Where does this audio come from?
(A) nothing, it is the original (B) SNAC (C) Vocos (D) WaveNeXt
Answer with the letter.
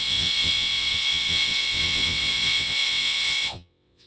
D